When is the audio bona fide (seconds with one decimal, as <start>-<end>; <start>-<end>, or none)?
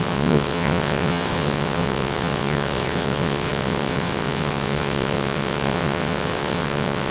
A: none